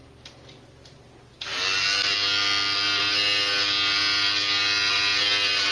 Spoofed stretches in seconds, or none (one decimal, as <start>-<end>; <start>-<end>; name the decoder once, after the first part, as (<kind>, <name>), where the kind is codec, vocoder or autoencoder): none